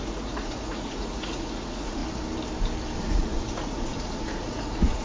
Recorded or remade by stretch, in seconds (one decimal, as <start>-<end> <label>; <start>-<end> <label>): 0.0-2.0 remade; 2.0-3.0 recorded; 3.0-5.0 remade